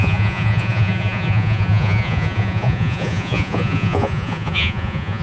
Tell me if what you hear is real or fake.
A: fake